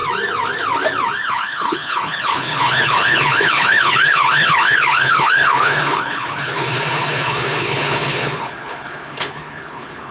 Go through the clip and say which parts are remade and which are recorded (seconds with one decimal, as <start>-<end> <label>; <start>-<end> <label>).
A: 0.0-1.3 recorded; 1.3-10.1 remade